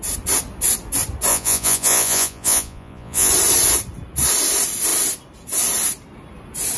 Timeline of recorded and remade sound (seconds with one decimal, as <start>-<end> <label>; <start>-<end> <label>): 0.0-1.3 recorded; 1.3-3.3 remade; 3.3-6.8 recorded